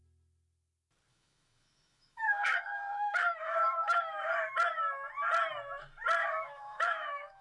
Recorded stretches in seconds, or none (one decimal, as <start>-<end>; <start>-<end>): 0.0-1.1; 4.3-6.2